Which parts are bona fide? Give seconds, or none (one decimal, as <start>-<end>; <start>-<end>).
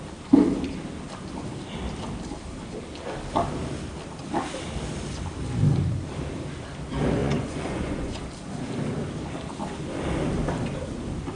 0.0-7.2; 8.2-11.4